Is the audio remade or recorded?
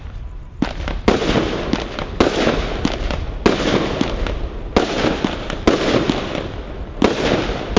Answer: recorded